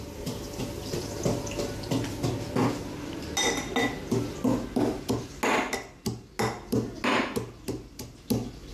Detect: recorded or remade recorded